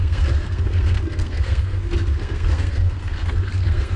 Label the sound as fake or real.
fake